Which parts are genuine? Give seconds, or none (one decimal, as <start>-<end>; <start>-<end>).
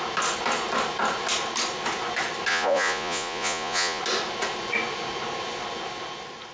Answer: 0.0-2.5; 4.0-6.5